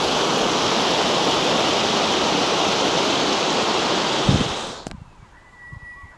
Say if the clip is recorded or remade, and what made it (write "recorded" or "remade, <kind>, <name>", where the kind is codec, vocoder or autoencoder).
recorded